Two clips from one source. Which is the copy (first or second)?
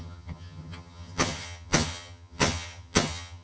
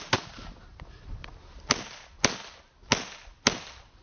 first